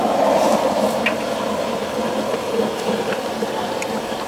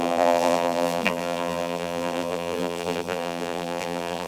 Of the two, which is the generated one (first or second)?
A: second